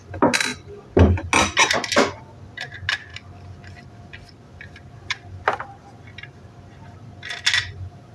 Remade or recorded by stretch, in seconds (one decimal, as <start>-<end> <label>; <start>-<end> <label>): 0.0-8.1 recorded